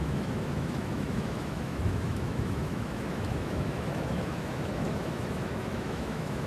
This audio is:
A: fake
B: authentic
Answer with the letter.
A